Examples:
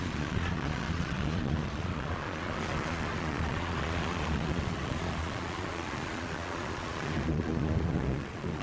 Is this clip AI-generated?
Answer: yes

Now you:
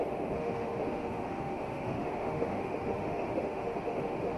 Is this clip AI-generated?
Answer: yes